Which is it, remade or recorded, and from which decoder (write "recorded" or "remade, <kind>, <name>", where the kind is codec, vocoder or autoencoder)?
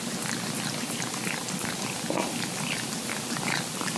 recorded